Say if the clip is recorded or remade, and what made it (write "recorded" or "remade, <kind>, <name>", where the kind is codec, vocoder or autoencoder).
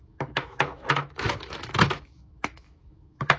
remade, autoencoder, DAC-VAE